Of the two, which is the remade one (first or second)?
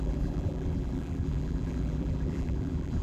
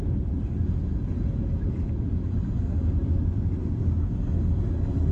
first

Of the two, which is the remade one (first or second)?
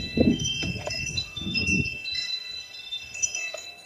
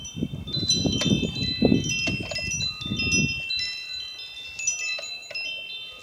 first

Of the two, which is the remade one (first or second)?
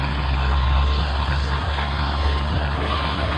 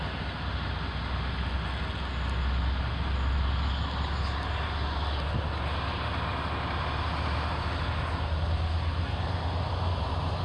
first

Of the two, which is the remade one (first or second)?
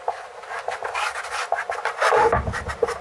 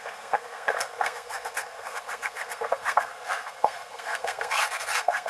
second